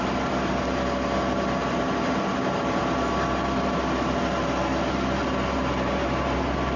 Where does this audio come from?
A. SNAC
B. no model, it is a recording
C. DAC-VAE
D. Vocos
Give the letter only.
B